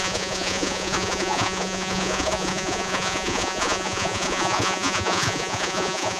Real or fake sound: fake